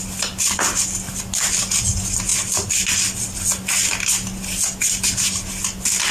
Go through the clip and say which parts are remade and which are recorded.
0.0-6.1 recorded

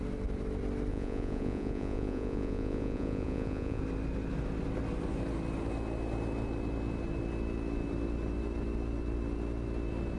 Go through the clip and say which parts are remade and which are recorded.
0.0-0.9 recorded; 0.9-3.8 remade; 3.8-10.2 recorded